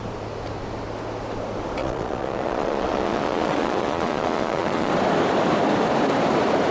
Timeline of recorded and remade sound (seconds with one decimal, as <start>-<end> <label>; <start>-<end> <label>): 0.0-1.8 recorded; 1.8-4.9 remade; 4.9-6.7 recorded